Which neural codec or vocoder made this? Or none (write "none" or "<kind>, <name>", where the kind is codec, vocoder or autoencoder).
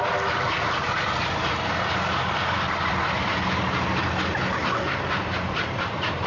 none